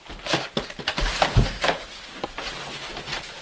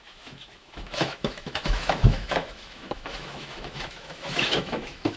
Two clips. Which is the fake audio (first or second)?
second